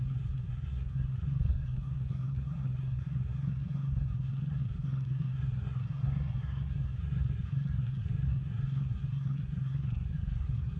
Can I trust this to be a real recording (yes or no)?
no